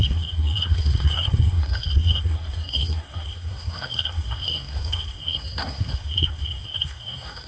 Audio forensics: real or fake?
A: fake